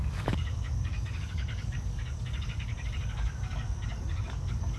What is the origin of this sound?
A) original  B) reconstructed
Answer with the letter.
B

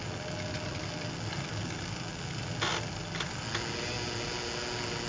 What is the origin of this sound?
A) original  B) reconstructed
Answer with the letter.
A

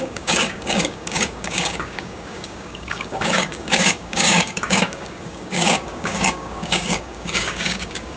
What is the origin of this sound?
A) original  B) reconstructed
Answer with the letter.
B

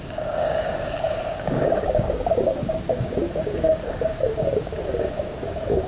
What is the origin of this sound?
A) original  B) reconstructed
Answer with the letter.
B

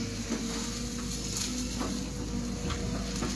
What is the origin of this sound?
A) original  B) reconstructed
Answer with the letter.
A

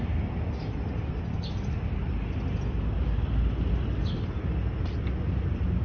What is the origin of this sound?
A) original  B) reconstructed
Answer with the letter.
A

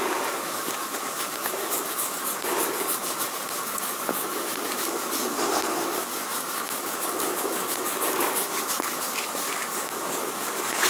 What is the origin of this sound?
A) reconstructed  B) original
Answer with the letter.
A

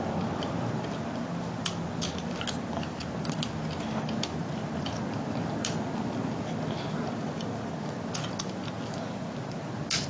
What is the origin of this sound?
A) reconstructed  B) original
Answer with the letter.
B